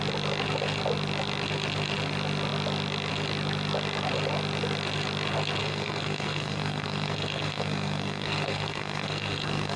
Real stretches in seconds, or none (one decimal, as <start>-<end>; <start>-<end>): 0.0-5.6